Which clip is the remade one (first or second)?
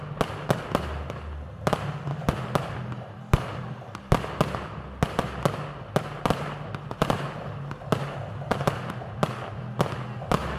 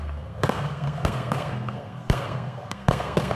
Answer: second